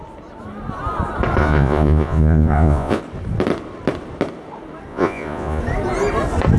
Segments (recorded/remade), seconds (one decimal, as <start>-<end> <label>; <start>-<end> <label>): 0.0-1.4 recorded; 1.4-3.0 remade; 3.0-4.9 recorded; 4.9-5.6 remade; 5.6-6.6 recorded